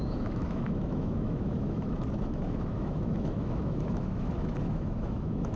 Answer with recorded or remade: remade